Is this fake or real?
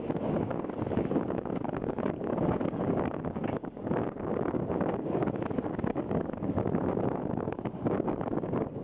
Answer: fake